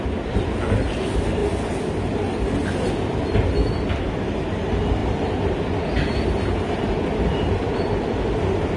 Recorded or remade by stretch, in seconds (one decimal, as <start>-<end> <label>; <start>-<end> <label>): 0.0-8.8 recorded